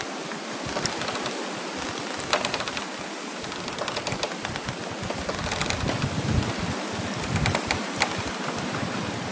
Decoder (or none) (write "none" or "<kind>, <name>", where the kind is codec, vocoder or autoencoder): none